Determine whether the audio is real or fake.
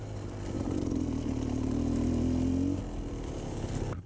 real